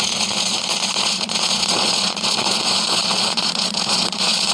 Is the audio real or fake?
fake